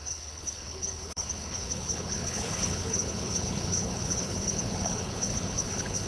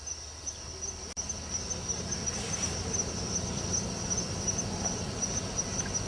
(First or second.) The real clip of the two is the second